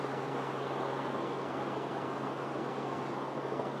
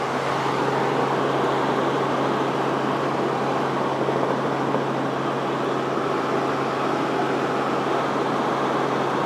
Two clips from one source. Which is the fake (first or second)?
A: first